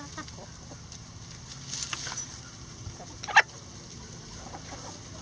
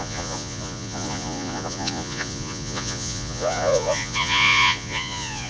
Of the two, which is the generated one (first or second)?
second